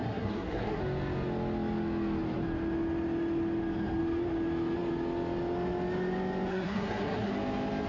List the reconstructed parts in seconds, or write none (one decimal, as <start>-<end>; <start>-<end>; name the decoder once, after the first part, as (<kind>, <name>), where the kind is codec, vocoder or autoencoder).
0.0-0.8 (codec, SNAC); 6.5-7.3